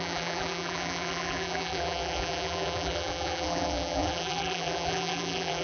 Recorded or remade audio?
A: remade